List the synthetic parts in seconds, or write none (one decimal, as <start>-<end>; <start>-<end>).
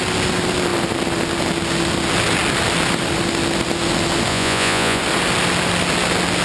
4.3-5.0